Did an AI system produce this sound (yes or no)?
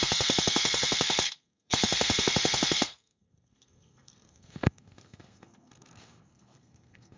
yes